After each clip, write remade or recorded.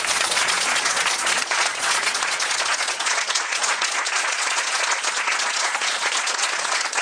remade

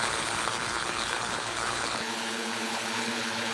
remade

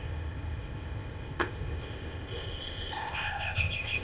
remade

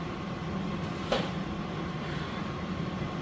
remade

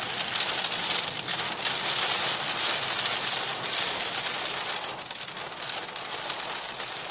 remade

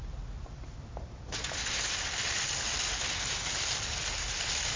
recorded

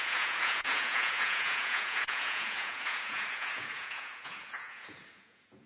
remade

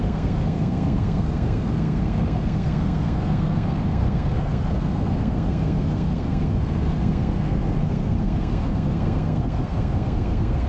remade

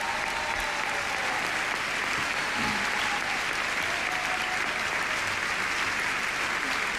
recorded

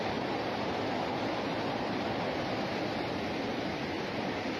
recorded